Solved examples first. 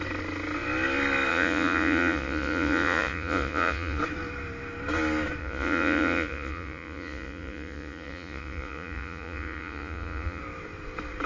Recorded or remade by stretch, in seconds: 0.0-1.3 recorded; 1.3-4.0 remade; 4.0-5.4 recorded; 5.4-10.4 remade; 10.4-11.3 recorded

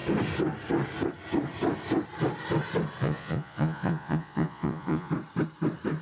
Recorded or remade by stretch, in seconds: 0.0-3.0 recorded; 3.0-5.1 remade; 5.1-6.0 recorded